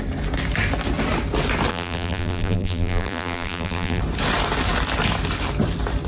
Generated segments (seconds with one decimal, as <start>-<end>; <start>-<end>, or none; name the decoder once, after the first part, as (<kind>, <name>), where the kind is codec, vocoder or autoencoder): 1.7-4.0 (vocoder, BigVGAN v2)